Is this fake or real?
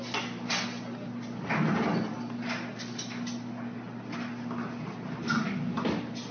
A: real